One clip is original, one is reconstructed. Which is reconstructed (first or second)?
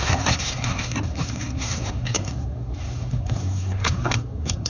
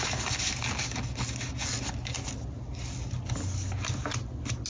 first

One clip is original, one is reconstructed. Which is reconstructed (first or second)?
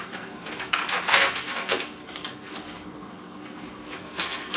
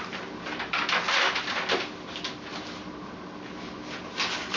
first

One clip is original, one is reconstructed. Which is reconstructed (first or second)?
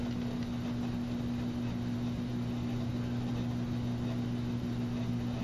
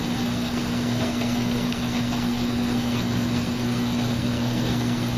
second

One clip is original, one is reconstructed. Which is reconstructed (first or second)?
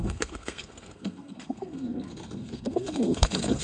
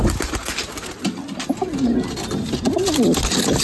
first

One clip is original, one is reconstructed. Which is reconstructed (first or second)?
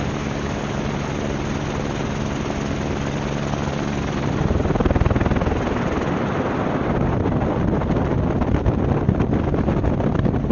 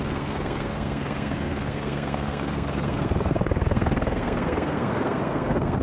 second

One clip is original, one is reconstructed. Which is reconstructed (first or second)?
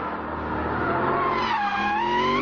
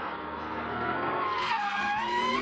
second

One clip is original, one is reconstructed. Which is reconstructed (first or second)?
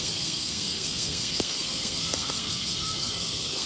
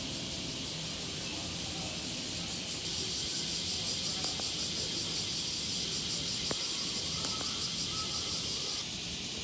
first